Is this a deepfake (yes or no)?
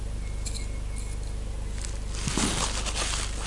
no